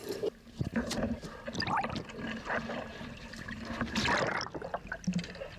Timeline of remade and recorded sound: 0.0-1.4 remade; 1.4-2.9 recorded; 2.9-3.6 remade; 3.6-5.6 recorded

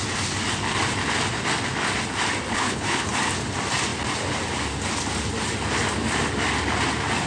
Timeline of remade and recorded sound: 0.0-2.5 recorded; 2.5-3.1 remade; 3.1-7.3 recorded

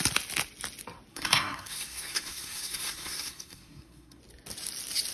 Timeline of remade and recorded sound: 0.0-1.1 recorded; 1.1-4.2 remade; 4.2-5.1 recorded